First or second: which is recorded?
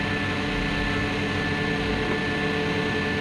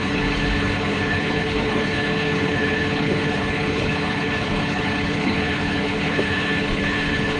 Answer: first